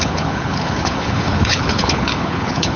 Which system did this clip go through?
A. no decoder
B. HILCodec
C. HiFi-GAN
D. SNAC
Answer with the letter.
B